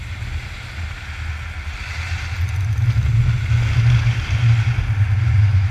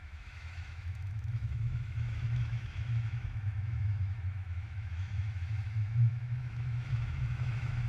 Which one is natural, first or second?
first